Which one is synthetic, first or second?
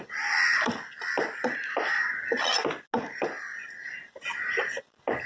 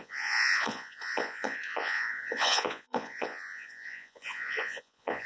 second